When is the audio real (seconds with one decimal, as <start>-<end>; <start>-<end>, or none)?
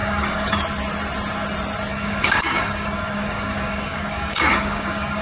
0.6-1.9